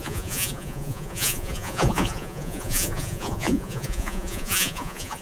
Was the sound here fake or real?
fake